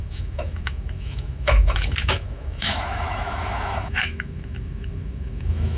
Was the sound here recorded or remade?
remade